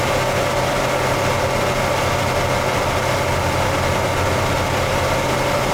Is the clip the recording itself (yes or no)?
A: yes